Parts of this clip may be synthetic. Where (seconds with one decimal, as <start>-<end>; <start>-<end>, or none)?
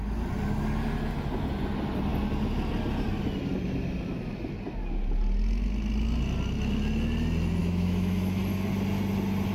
7.6-8.4